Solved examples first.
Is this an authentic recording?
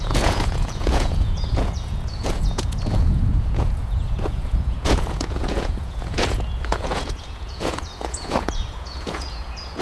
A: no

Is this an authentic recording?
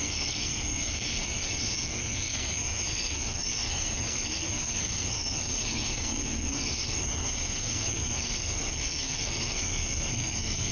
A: no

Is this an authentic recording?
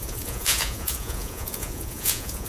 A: no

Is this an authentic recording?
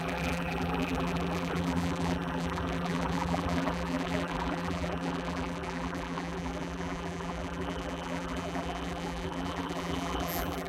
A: no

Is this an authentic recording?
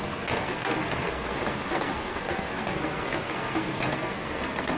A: no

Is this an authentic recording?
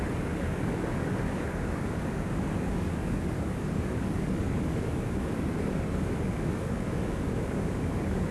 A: no